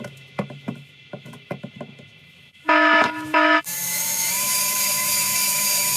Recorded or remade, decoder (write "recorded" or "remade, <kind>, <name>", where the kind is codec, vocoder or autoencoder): remade, autoencoder, DAC-VAE